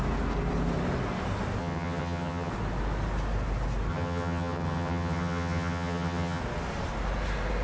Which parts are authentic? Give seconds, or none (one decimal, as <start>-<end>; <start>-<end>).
0.0-1.6; 2.5-3.9; 6.4-7.6